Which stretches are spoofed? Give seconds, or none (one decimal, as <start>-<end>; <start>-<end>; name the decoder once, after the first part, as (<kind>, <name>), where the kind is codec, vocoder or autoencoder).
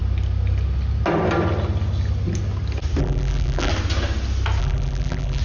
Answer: 3.0-3.7 (vocoder, BigVGAN v2); 4.6-5.4